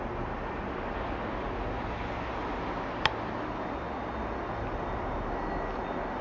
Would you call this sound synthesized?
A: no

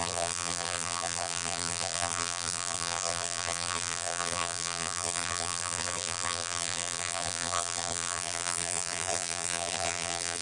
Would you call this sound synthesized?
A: yes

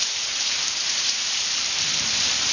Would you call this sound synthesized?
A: yes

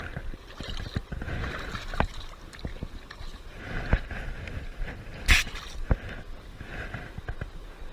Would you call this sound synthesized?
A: no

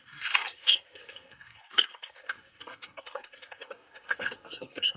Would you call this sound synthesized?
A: yes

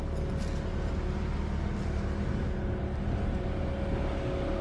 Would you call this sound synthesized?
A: no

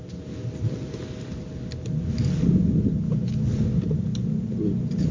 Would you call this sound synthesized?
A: no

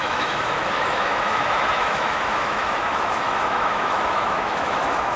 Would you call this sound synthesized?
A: yes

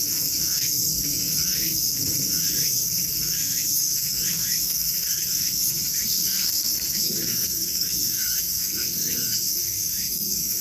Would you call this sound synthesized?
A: yes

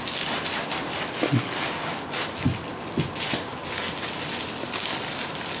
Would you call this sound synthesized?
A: no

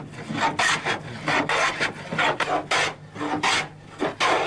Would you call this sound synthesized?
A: no